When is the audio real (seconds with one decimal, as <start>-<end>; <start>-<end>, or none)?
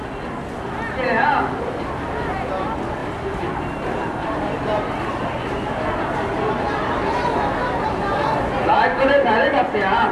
0.0-3.0; 4.9-8.6